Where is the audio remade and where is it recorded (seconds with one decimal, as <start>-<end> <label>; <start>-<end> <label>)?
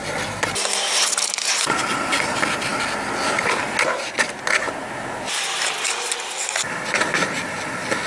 0.0-8.1 recorded